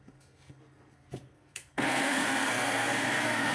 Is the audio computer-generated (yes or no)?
yes